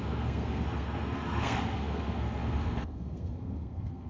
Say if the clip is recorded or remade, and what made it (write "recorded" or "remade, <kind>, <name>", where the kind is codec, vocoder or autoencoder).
remade, codec, SNAC